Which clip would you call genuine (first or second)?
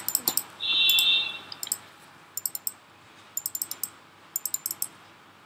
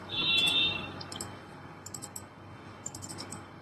first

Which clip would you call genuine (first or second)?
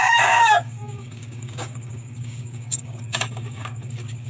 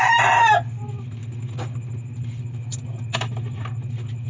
second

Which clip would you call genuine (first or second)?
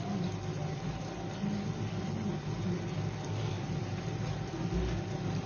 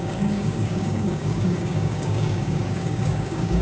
first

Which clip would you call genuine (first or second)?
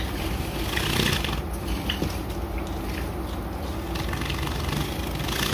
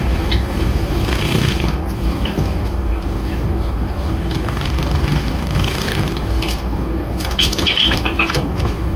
first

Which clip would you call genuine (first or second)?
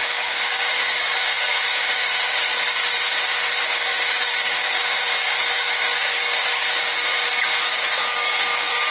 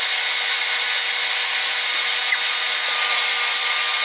second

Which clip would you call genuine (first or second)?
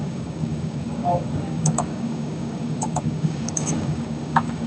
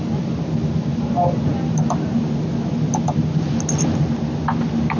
second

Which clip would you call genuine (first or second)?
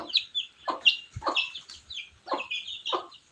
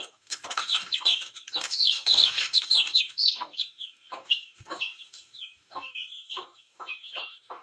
first